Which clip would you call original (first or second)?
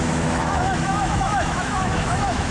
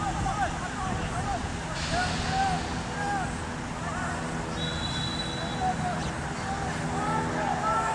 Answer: second